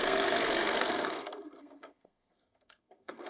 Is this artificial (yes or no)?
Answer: yes